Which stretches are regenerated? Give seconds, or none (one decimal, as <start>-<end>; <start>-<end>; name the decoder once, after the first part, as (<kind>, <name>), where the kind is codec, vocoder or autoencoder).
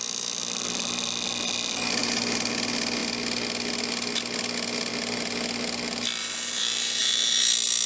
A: 2.0-2.5 (vocoder, BigVGAN v2); 6.2-7.4